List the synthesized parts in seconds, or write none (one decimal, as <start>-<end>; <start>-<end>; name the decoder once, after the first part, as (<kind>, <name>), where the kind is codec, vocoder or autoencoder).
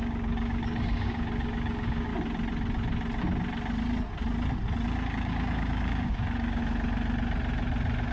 0.0-2.1 (codec, DAC); 5.1-6.6